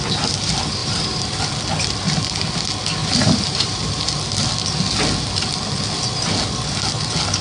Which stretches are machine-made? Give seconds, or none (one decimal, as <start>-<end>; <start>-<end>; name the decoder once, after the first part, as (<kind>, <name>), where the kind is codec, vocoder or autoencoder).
0.8-1.4 (vocoder, BigVGAN v2); 3.0-4.1